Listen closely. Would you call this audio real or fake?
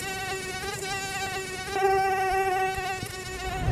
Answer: real